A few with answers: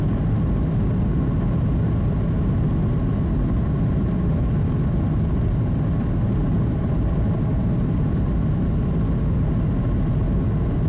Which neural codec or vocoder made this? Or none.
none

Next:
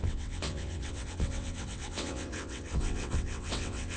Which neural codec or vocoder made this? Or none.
vocoder, WaveNeXt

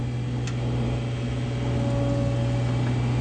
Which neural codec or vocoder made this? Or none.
none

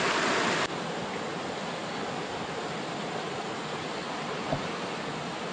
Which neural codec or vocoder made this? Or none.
none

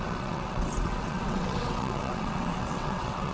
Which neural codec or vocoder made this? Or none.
vocoder, WaveNeXt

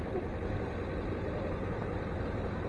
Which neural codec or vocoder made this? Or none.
none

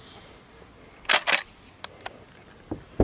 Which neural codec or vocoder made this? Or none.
none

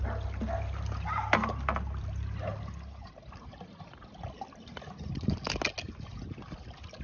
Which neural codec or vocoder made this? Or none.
none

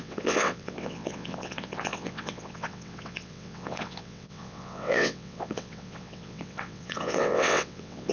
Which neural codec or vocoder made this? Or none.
vocoder, WaveNeXt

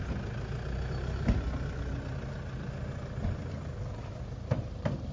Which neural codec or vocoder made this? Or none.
none